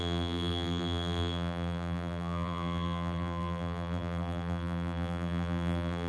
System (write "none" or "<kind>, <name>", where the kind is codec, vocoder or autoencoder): vocoder, BigVGAN v2